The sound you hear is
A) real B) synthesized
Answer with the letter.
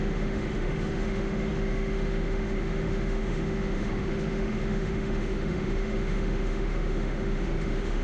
B